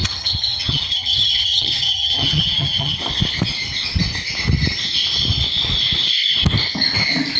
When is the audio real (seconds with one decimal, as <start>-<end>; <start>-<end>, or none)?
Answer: 3.0-7.4